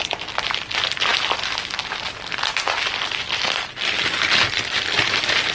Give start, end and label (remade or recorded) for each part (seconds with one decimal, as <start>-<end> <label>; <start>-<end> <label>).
0.0-5.5 recorded